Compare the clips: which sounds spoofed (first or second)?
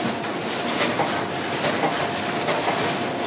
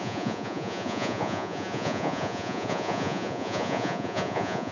second